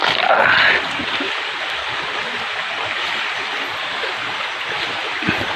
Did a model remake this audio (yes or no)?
no